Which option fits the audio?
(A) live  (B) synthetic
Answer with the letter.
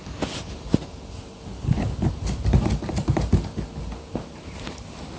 A